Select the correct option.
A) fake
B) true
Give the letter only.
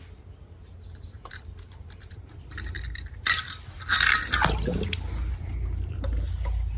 B